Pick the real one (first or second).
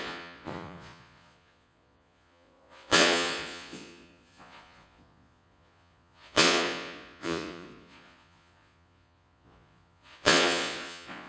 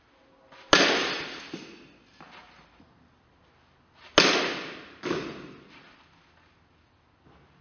second